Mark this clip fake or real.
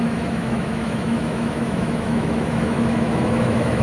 fake